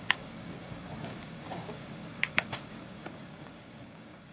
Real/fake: fake